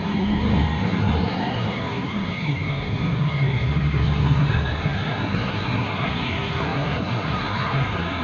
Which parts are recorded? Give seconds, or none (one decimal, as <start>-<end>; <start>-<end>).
none